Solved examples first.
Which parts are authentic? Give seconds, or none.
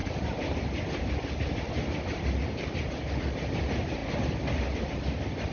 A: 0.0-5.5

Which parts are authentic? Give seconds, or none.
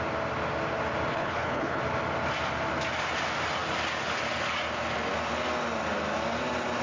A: 0.0-1.1; 1.8-6.8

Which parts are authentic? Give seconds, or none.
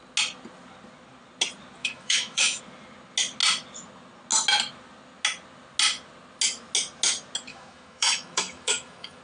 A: 0.0-1.8; 2.6-7.5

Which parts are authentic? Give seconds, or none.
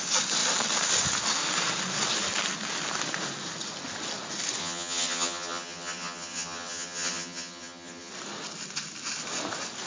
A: 0.0-4.6; 8.1-9.9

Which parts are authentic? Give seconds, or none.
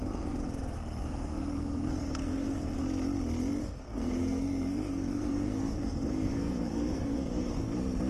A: 2.8-3.6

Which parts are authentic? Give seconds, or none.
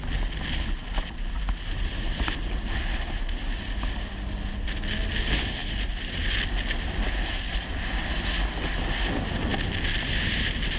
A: 0.0-10.8